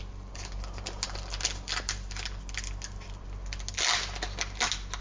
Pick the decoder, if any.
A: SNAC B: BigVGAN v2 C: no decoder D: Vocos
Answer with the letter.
C